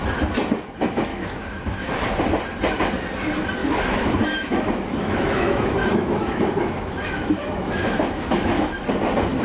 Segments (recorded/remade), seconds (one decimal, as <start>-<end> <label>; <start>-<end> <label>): 0.0-1.1 recorded; 1.1-1.9 remade; 1.9-3.6 recorded; 3.6-8.7 remade; 8.7-9.4 recorded